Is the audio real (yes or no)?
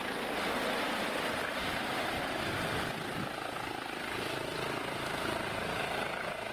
yes